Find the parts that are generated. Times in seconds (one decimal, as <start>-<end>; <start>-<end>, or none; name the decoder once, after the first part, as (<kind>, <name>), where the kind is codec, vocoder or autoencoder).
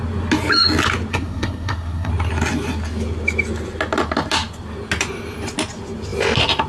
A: 1.1-2.1 (codec, SNAC)